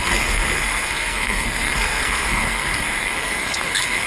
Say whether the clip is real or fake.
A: fake